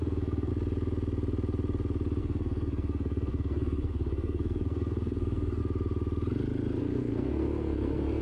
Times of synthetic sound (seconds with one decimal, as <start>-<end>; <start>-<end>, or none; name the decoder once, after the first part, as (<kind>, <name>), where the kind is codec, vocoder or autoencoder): 0.0-0.5 (codec, SNAC); 2.2-5.6; 6.8-8.2